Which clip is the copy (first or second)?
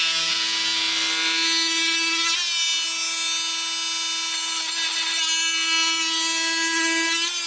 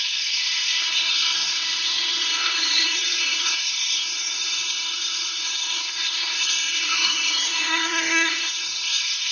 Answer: second